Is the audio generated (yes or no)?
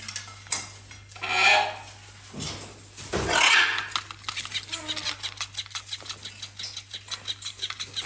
no